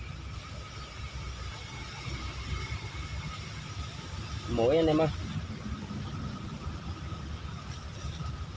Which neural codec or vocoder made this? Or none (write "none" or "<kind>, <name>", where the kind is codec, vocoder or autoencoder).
none